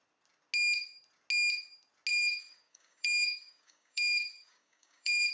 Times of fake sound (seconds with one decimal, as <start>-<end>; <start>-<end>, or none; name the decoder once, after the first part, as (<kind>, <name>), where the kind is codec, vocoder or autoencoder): 2.1-5.3 (codec, DAC)